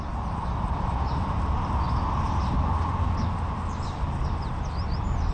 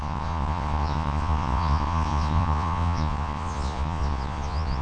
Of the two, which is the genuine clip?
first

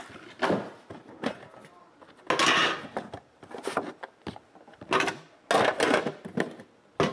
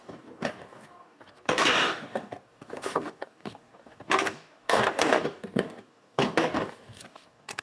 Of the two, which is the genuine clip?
first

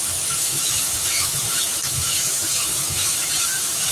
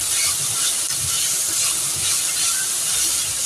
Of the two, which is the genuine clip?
second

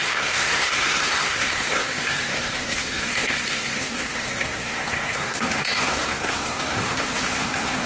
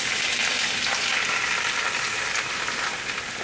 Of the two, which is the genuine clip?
second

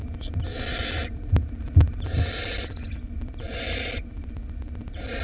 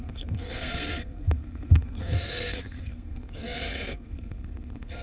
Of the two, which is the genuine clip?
first